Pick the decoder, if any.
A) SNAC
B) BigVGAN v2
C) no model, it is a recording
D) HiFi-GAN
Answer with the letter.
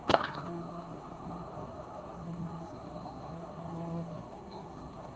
A